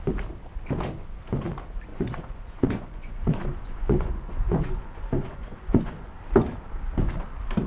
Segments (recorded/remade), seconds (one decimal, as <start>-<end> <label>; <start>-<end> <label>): 0.0-1.9 recorded; 1.9-6.1 remade; 6.1-7.7 recorded